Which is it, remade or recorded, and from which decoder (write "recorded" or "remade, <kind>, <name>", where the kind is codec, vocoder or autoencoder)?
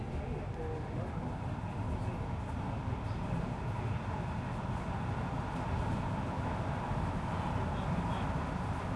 recorded